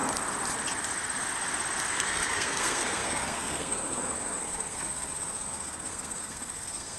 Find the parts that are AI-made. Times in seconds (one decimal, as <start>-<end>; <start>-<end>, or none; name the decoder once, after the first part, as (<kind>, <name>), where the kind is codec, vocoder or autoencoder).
1.9-7.0 (codec, SNAC)